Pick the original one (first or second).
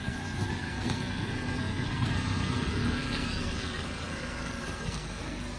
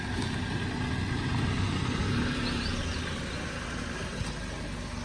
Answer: second